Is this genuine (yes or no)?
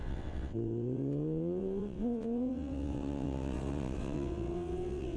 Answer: no